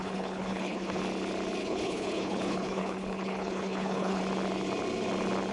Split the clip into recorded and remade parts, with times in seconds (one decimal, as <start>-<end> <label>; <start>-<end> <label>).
0.0-1.0 remade; 1.0-1.6 recorded; 1.6-4.2 remade; 4.2-5.5 recorded